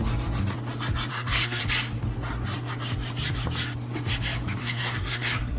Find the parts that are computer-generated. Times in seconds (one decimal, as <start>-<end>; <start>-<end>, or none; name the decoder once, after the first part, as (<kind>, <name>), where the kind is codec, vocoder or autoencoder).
1.1-1.6 (codec, SNAC); 4.6-5.6